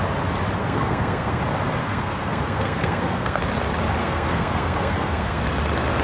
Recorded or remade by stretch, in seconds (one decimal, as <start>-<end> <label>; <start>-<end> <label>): 0.0-0.6 recorded; 0.6-1.4 remade; 1.4-1.8 recorded; 1.8-3.4 remade; 3.4-4.0 recorded; 4.0-5.4 remade; 5.4-6.0 recorded